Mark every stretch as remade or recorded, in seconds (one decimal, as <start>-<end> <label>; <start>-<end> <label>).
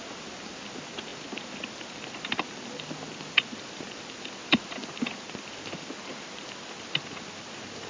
0.0-7.9 recorded